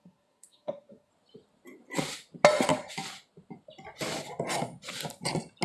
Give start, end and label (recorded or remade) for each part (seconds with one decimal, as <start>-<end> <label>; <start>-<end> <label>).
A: 0.0-1.1 remade; 1.1-5.6 recorded